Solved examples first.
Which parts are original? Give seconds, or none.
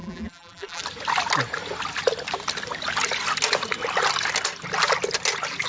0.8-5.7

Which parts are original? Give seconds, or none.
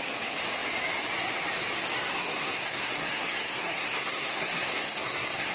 0.0-2.1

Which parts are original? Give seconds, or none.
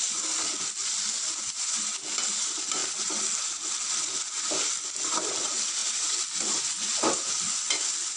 0.0-8.2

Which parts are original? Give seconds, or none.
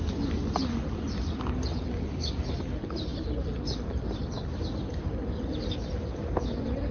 0.0-6.9